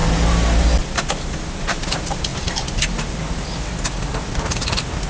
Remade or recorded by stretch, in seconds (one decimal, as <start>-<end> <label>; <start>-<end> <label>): 0.0-5.1 recorded